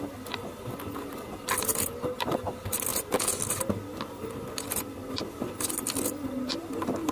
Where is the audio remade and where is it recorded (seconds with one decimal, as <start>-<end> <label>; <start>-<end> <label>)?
0.0-7.1 recorded